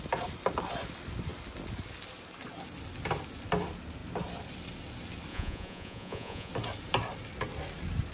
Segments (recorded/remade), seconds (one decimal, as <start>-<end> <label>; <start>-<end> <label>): 0.0-5.3 recorded; 5.3-6.5 remade; 6.5-8.1 recorded